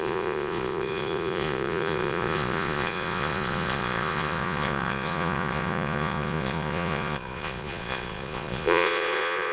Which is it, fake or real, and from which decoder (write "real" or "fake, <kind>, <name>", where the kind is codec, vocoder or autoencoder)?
fake, vocoder, Vocos